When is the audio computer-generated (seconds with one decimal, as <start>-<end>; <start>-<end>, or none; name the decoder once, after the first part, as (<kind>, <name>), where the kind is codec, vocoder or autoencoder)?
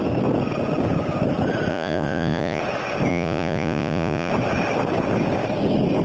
1.7-2.6 (vocoder, Vocos); 3.1-4.3